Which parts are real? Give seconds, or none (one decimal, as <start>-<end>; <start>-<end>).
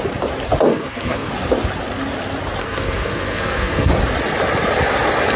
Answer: 0.0-0.7; 1.3-2.6; 3.9-5.4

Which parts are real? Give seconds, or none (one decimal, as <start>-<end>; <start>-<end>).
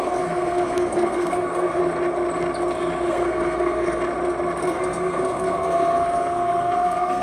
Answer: 1.8-3.1; 4.0-4.6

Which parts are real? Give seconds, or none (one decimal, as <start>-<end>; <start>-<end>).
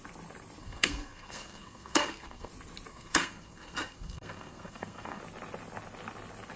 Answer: 0.0-0.6; 2.5-2.9; 5.2-6.6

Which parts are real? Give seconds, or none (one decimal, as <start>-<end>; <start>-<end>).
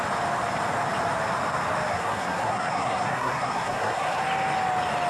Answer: 0.0-1.9; 4.2-5.1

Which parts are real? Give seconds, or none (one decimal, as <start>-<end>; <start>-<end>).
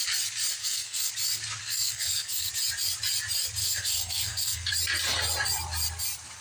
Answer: 0.0-0.6; 1.1-1.6; 2.5-3.6; 4.7-6.4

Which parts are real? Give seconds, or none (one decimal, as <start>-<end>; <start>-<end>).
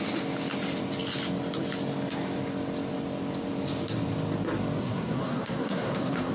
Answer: 0.0-4.8